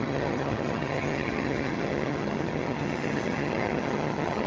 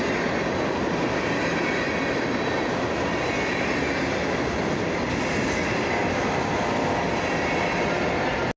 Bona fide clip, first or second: second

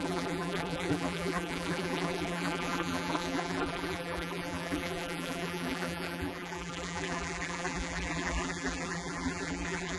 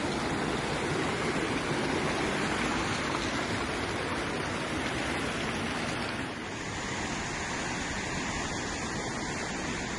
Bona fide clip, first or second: second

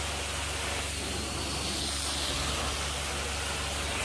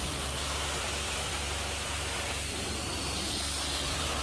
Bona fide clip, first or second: first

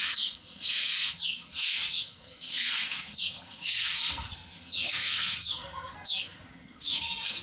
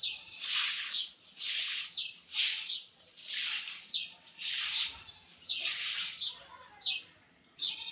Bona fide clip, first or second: second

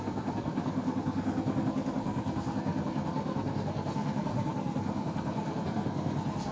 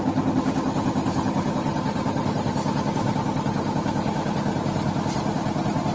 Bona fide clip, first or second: second